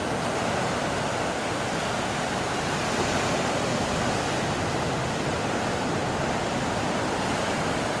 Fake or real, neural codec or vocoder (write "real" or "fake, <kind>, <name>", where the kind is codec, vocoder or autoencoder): real